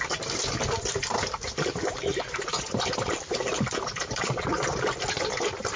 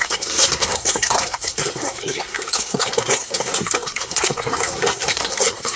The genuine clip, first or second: first